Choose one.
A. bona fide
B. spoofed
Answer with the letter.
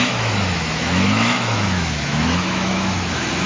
B